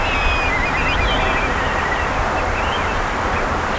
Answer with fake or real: real